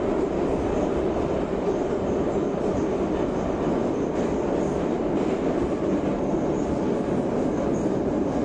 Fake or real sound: real